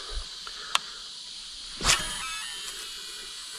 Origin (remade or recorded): recorded